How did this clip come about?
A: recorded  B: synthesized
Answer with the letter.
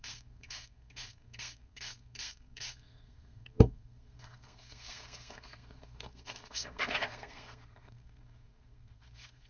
B